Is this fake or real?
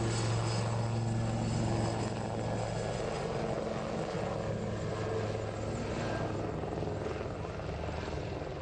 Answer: real